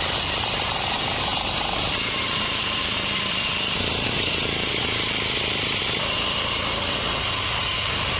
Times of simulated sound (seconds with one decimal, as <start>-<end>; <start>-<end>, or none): none

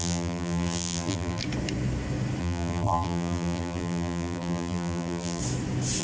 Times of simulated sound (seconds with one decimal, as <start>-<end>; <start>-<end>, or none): 0.0-1.4; 2.4-5.4

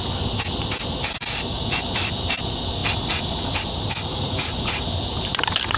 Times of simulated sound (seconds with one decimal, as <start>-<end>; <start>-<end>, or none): 4.1-4.7

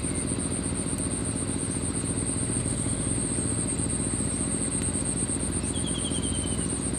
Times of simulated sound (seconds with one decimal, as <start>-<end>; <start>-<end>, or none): 2.6-3.1

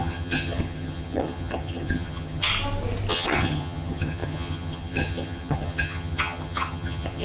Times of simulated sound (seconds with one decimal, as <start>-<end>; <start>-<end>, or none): 0.0-2.5; 3.1-7.2

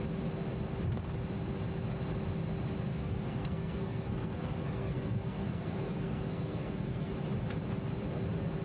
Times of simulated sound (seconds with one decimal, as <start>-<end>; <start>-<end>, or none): 2.9-7.1